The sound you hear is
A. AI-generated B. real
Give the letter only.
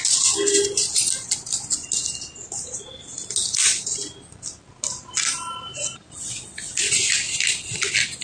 B